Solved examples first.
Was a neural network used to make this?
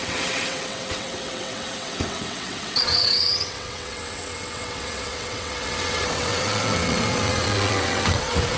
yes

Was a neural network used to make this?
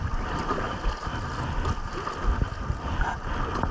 no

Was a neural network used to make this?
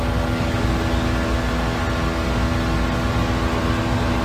no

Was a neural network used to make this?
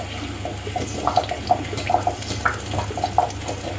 no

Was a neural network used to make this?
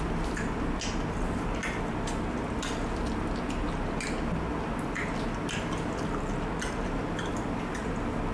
no